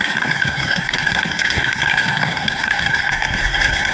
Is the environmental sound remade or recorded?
remade